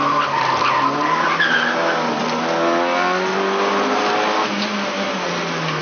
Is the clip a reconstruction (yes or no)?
no